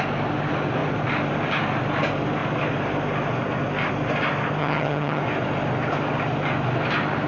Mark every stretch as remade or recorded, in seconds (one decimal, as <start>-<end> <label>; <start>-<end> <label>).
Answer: 0.0-4.6 recorded; 4.6-5.2 remade; 5.2-7.3 recorded